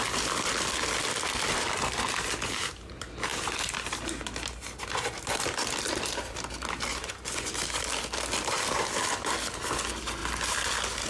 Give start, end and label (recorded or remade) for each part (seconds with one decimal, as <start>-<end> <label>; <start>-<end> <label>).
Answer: 0.0-6.9 recorded; 6.9-7.5 remade; 7.5-11.1 recorded